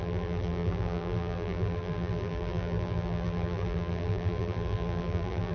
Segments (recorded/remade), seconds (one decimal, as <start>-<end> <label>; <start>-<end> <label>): 0.0-5.5 remade